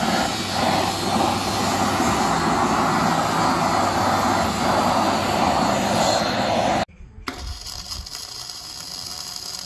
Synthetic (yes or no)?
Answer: no